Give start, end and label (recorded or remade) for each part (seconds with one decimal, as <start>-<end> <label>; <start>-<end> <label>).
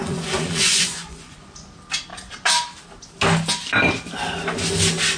0.0-1.7 remade; 1.7-5.2 recorded